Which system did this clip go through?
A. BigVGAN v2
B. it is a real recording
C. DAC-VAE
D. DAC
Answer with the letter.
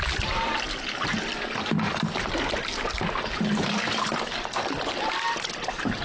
B